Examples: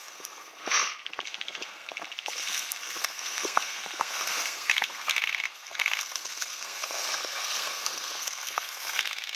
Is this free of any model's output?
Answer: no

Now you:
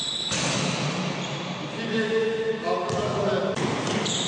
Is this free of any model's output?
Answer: yes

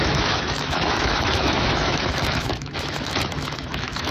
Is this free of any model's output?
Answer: no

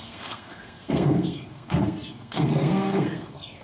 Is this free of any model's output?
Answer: no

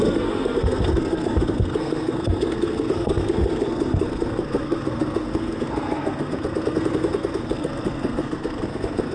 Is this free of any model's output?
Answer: no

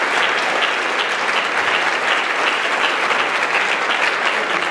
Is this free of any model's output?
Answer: yes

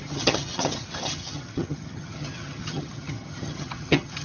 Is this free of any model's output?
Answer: no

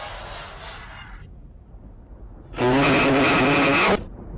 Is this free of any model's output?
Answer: yes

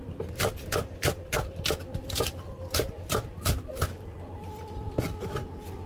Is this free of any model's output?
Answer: no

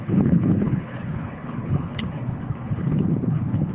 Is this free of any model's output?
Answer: no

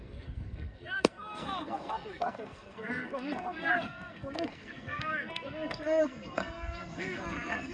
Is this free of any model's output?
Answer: no